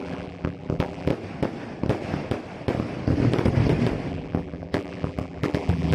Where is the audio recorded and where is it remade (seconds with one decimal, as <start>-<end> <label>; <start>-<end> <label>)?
0.0-1.1 remade; 1.1-4.1 recorded; 4.1-5.9 remade